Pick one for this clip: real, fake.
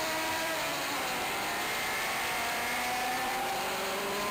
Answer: fake